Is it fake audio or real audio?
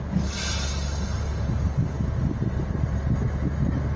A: real